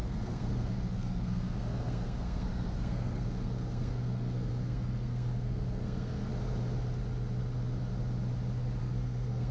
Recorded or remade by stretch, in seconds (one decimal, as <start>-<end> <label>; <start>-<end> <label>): 0.0-6.3 remade; 6.3-8.8 recorded; 8.8-9.5 remade